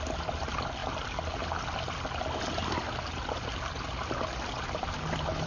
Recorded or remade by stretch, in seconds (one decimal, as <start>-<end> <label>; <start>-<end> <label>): 0.0-5.5 recorded